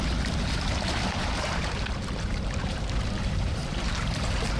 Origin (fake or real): fake